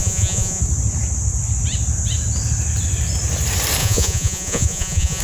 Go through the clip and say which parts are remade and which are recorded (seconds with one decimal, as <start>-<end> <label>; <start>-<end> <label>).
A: 0.0-0.6 remade; 0.6-3.8 recorded; 3.8-5.2 remade